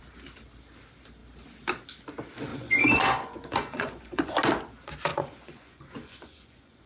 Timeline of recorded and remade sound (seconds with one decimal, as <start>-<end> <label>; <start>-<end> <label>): 0.0-2.5 recorded; 2.5-4.3 remade; 4.3-5.1 recorded; 5.1-6.9 remade